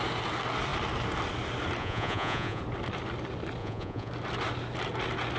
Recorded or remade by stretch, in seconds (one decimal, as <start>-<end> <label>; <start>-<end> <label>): 0.0-1.8 recorded; 1.8-2.6 remade; 2.6-3.6 recorded; 3.6-4.1 remade; 4.1-5.4 recorded